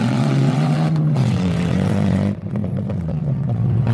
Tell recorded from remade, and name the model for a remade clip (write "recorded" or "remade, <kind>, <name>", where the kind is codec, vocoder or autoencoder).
remade, vocoder, WaveNeXt